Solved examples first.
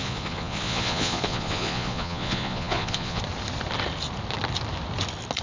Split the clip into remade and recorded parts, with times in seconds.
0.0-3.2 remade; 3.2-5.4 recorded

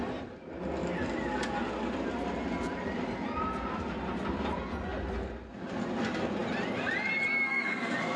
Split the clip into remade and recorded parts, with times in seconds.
0.0-7.5 recorded; 7.5-8.2 remade

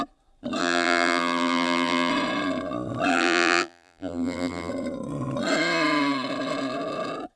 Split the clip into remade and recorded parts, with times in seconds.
0.0-0.6 recorded; 0.6-2.1 remade; 2.1-3.1 recorded; 3.1-4.7 remade; 4.7-7.4 recorded

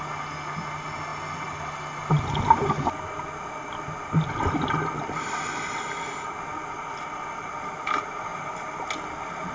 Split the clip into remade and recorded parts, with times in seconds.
0.0-9.5 recorded

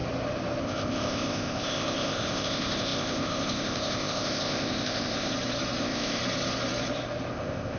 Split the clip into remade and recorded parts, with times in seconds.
0.0-0.6 recorded; 0.6-5.3 remade; 5.3-5.8 recorded; 5.8-6.2 remade; 6.2-7.3 recorded; 7.3-7.8 remade

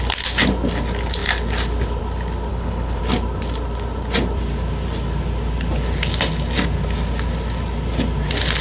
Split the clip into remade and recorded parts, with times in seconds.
0.0-2.5 recorded; 2.5-3.0 remade; 3.0-8.6 recorded

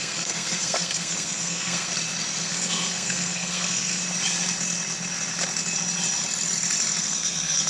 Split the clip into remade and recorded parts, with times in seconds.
0.0-1.9 remade; 1.9-2.4 recorded; 2.4-4.0 remade; 4.0-7.0 recorded; 7.0-7.7 remade